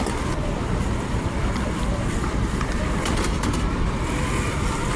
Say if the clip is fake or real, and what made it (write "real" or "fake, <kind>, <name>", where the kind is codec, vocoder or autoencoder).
fake, vocoder, BigVGAN v2